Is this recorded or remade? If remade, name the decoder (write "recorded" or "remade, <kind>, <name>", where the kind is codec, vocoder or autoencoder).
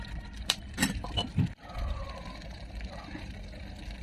remade, vocoder, BigVGAN v2